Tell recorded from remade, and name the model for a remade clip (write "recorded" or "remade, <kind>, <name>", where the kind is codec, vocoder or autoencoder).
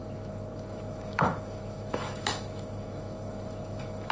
remade, autoencoder, DAC-VAE